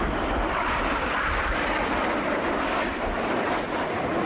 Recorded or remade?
recorded